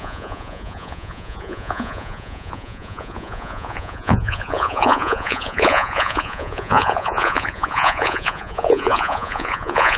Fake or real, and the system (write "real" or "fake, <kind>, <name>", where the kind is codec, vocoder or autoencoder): fake, vocoder, Vocos